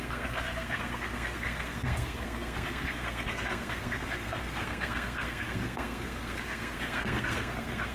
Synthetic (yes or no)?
yes